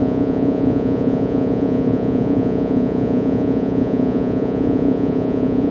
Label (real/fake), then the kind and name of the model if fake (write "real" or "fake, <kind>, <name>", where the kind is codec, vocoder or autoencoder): fake, vocoder, Vocos